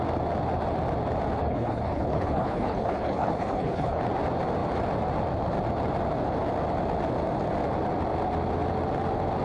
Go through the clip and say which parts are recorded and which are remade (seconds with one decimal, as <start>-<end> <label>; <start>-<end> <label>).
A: 0.0-1.4 recorded; 1.4-4.0 remade; 4.0-9.4 recorded